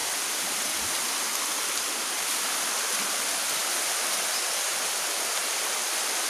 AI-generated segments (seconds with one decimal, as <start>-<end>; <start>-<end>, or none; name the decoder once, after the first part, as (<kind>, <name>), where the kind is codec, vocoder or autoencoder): none